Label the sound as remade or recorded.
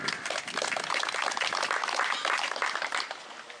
recorded